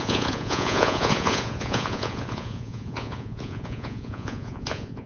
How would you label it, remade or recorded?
remade